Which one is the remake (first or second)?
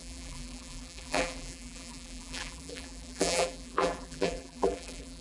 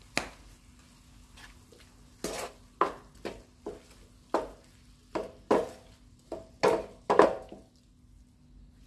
first